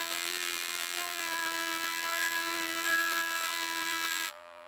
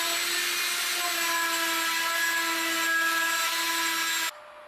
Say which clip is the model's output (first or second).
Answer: first